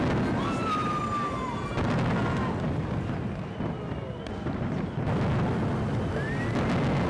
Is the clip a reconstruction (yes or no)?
no